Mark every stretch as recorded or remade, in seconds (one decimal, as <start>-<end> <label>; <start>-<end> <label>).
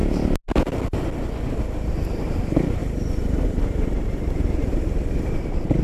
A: 0.0-1.9 recorded; 1.9-5.8 remade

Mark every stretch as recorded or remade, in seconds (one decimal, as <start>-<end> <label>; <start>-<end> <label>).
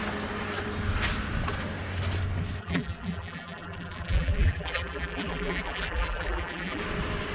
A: 0.0-2.6 recorded; 2.6-6.8 remade; 6.8-7.3 recorded